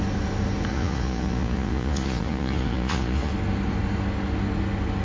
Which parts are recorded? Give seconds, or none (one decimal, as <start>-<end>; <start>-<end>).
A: 0.0-0.7; 3.3-5.0